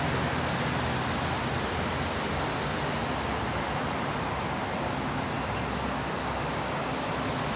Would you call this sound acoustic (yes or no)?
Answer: yes